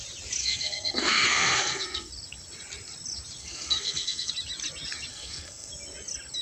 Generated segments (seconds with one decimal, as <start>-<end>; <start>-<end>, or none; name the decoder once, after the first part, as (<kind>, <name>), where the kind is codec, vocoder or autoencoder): 0.4-2.1 (codec, SNAC); 3.4-4.3; 5.1-5.7